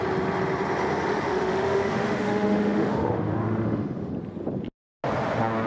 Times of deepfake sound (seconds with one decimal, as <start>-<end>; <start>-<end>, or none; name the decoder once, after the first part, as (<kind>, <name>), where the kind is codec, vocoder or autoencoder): 1.1-4.1 (autoencoder, DAC-VAE)